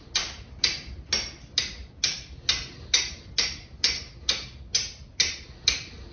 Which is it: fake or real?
real